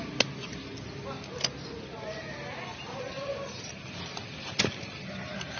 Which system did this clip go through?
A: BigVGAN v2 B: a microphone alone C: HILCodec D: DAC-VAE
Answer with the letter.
B